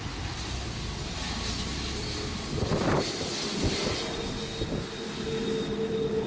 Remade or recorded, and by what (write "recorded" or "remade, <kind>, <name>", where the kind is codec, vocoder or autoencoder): recorded